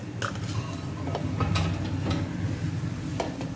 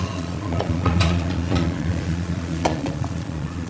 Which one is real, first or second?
first